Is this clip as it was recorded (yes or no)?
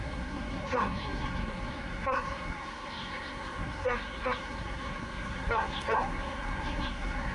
no